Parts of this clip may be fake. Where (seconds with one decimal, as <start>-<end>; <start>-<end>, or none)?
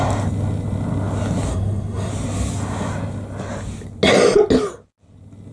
1.5-2.1